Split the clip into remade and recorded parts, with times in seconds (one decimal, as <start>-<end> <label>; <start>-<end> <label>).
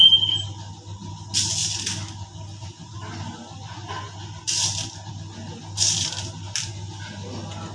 0.0-7.7 recorded